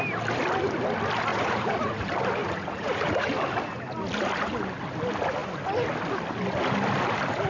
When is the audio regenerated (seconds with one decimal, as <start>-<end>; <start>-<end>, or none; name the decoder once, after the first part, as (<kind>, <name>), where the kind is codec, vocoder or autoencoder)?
1.3-2.0 (vocoder, Vocos); 2.4-3.3